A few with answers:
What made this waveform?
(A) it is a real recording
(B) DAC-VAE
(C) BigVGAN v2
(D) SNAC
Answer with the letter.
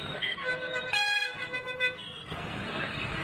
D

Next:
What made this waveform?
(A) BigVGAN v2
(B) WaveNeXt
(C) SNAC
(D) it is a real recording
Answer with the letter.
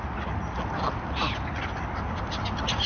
D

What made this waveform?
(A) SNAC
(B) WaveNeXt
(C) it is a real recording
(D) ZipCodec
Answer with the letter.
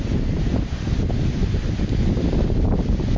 C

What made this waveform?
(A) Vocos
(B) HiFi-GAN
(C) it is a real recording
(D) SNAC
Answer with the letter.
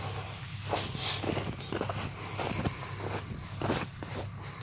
C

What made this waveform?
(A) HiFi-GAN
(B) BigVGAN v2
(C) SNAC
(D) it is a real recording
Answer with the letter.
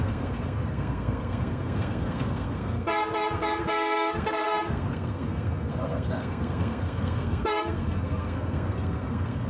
C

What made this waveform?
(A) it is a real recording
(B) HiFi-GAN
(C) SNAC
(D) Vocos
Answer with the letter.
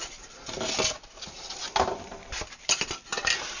A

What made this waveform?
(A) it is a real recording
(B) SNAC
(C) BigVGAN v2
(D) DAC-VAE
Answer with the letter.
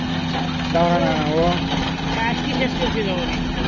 A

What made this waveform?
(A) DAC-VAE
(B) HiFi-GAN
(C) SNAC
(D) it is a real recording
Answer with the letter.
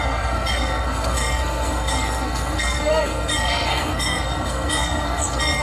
C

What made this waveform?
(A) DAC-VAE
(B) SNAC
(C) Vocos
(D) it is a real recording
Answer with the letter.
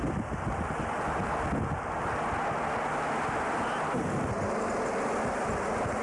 D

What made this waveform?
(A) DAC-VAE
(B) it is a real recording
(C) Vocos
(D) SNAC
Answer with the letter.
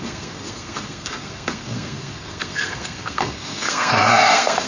D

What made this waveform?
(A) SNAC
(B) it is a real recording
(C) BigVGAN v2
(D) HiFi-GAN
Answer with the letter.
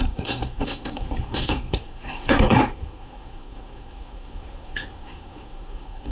A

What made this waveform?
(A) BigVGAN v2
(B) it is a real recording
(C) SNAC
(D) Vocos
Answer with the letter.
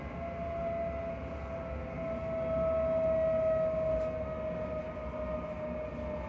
B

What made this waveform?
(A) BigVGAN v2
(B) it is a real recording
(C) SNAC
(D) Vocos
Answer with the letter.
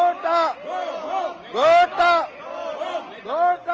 B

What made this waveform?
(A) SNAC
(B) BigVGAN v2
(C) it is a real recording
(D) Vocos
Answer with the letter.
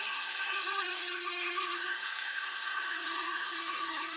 A